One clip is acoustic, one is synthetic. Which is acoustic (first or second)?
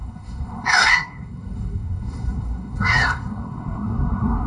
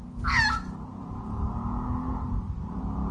second